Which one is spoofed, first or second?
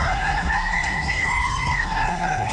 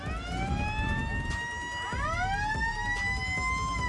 first